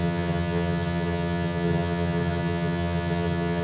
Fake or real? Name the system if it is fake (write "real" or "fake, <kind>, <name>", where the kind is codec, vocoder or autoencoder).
fake, vocoder, HiFi-GAN